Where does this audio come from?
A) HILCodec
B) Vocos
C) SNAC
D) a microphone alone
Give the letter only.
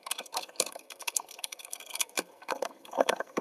C